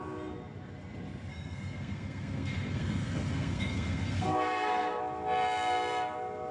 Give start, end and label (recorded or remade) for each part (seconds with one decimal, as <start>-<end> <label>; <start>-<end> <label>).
0.0-1.3 recorded; 1.3-5.0 remade; 5.0-6.5 recorded